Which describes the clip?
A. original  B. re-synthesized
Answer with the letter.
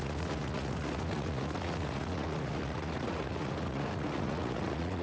B